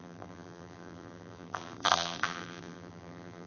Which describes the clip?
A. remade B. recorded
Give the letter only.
A